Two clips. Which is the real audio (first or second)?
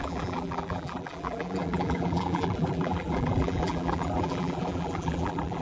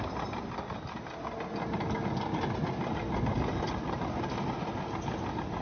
second